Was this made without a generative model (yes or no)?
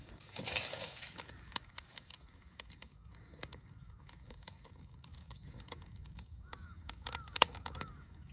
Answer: no